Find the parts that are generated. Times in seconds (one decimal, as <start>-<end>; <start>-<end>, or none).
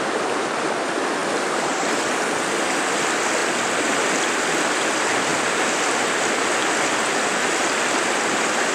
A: 1.2-2.2; 5.3-5.9